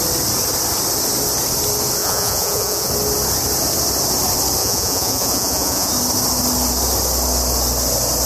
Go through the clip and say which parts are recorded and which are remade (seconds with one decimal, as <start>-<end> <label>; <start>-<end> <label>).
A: 0.0-2.0 recorded; 2.0-2.9 remade; 2.9-4.6 recorded; 4.6-5.9 remade; 5.9-8.3 recorded